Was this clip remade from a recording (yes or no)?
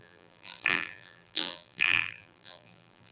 yes